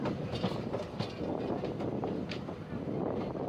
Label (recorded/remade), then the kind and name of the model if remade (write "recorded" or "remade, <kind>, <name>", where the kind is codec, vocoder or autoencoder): recorded